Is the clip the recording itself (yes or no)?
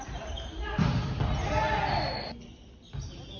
yes